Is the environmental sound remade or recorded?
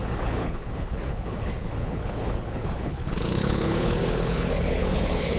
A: remade